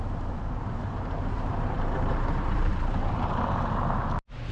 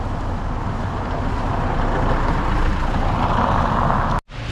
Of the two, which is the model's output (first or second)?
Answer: first